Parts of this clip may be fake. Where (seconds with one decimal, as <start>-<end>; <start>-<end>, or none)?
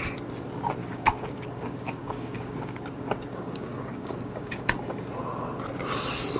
0.8-4.6